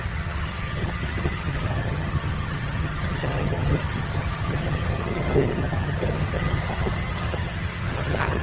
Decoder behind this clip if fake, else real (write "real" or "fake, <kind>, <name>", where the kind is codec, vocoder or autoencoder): fake, vocoder, HiFi-GAN